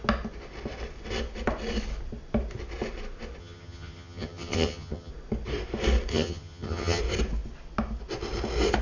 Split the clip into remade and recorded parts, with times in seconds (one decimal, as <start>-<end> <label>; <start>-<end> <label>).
0.0-3.4 recorded; 3.4-5.1 remade; 5.1-6.1 recorded; 6.1-7.0 remade; 7.0-8.8 recorded